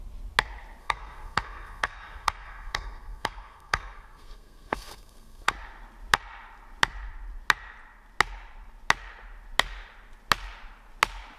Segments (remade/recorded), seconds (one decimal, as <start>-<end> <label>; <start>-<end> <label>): 0.0-0.8 recorded; 0.8-5.5 remade; 5.5-11.4 recorded